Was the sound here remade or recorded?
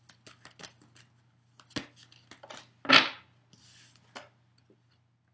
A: recorded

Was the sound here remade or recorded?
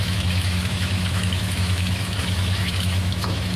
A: remade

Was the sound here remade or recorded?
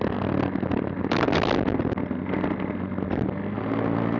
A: recorded